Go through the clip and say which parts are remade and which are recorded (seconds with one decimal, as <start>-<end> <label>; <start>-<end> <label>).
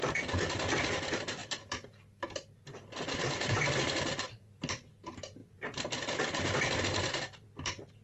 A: 0.0-1.4 recorded; 1.4-4.9 remade; 4.9-5.4 recorded; 5.4-6.8 remade; 6.8-8.0 recorded